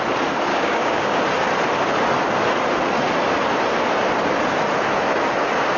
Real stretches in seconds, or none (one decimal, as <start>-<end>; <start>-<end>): 0.0-0.5; 1.2-5.8